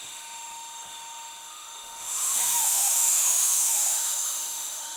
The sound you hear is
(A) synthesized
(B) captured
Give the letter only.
A